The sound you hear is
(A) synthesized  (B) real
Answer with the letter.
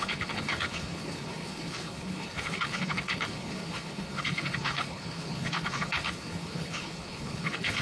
A